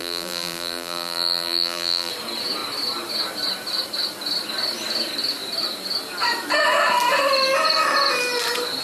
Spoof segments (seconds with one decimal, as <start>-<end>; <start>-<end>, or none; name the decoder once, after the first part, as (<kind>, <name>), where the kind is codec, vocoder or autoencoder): 0.0-2.1 (vocoder, BigVGAN v2)